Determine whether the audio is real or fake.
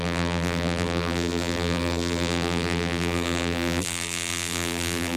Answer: fake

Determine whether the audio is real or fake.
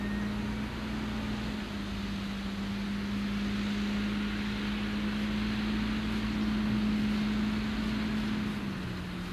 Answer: real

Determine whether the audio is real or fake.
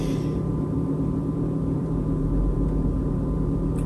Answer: fake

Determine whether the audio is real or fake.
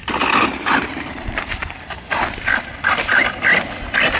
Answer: fake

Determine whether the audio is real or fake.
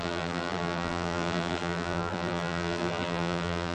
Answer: fake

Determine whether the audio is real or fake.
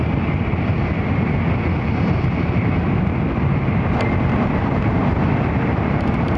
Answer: fake